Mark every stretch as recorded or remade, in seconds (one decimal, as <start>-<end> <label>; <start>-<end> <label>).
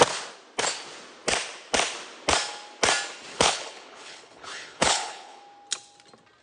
0.0-3.3 recorded; 3.3-5.4 remade; 5.4-6.4 recorded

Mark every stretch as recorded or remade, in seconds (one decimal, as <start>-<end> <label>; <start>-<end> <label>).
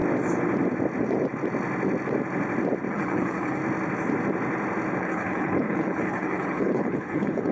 0.0-2.9 recorded; 2.9-3.6 remade; 3.6-5.0 recorded; 5.0-7.5 remade